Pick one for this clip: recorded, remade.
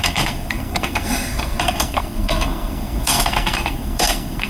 remade